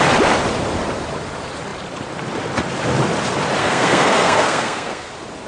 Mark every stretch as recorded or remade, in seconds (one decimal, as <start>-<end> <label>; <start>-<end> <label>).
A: 0.0-3.6 recorded; 3.6-5.1 remade; 5.1-5.5 recorded